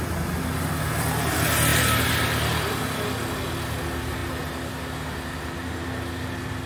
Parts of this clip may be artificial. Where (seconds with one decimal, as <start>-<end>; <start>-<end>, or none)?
none